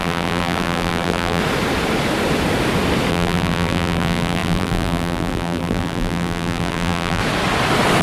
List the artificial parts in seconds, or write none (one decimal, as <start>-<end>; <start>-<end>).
0.0-1.4; 3.1-7.2